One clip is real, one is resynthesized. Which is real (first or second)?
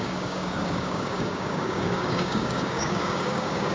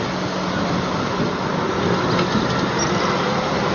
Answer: second